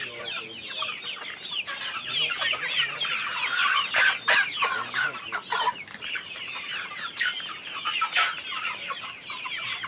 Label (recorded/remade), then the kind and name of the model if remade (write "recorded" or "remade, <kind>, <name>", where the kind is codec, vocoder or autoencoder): remade, vocoder, BigVGAN v2